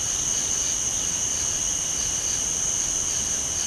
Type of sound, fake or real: real